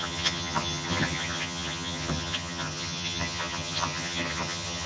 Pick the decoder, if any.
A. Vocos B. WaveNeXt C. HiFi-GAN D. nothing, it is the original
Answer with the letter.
C